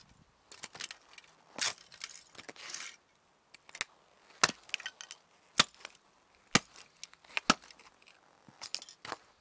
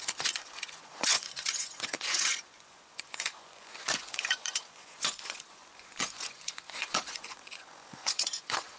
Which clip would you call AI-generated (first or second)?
second